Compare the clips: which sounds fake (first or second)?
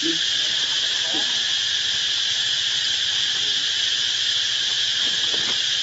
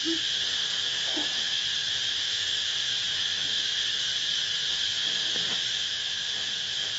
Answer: second